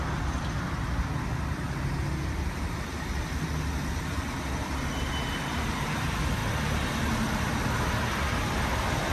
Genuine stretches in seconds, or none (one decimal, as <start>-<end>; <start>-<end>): 0.0-9.1